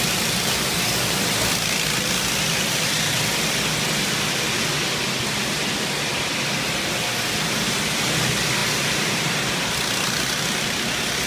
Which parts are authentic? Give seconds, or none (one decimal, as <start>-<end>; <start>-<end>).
0.0-11.3